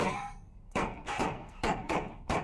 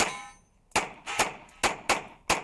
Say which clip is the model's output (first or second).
first